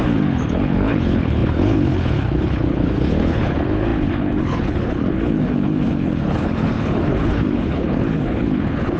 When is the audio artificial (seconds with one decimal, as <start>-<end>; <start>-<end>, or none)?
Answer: 0.0-9.0